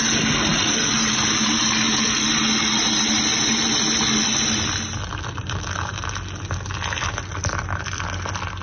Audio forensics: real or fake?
real